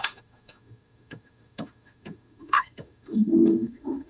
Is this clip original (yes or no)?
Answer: no